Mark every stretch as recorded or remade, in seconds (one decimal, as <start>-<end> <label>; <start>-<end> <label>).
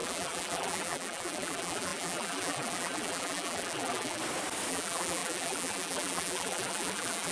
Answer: 0.0-4.2 remade; 4.2-4.7 recorded; 4.7-7.3 remade